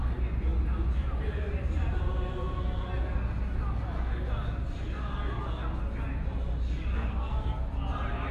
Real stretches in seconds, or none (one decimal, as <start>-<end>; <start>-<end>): 0.0-6.9; 7.5-8.3